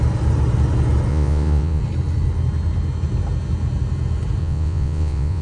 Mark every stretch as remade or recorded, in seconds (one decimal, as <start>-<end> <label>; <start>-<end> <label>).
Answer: 0.0-1.1 recorded; 1.1-1.8 remade; 1.8-4.4 recorded; 4.4-5.4 remade